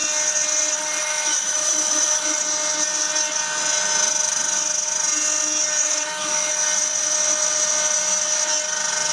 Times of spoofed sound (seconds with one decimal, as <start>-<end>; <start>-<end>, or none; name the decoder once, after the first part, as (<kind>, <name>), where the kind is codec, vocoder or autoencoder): 1.0-2.4 (autoencoder, DAC-VAE); 5.8-6.5